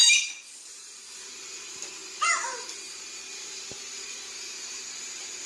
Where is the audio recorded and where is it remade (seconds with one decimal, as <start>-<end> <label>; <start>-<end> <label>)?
0.0-5.5 recorded